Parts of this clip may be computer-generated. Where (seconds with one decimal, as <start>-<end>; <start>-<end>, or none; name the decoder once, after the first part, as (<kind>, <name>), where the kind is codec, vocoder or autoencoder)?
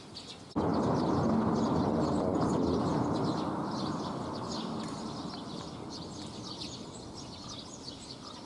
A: none